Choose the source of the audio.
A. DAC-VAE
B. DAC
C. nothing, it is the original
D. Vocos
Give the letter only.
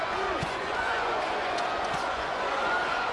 D